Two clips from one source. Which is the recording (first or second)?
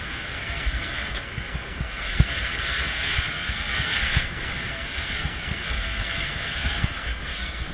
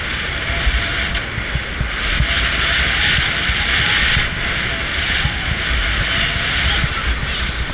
second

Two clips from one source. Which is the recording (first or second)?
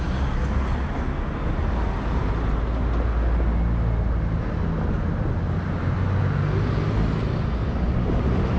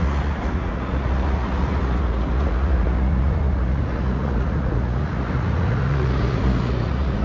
first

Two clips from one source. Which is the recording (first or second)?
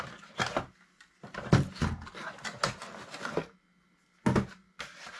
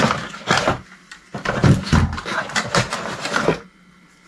first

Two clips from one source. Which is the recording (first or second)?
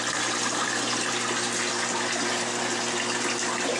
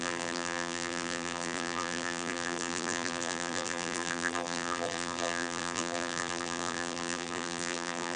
first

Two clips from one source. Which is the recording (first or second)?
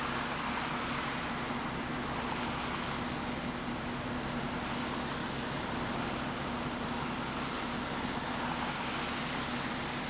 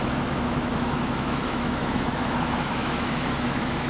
first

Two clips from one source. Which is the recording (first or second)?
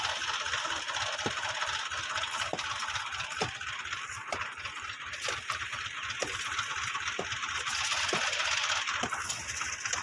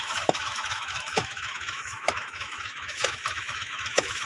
first